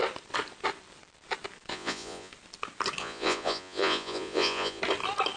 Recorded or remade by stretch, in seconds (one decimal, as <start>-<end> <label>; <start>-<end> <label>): 0.0-1.7 recorded; 1.7-2.3 remade; 2.3-3.0 recorded; 3.0-4.8 remade; 4.8-5.4 recorded